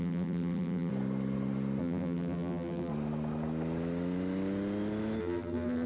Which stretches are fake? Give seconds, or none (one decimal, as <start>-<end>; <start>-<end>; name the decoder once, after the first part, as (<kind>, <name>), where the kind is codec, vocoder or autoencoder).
0.0-0.9 (vocoder, BigVGAN v2); 1.8-2.9; 5.2-5.9